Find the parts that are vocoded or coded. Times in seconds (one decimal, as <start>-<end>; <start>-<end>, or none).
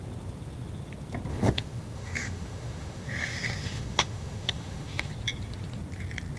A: 1.3-5.1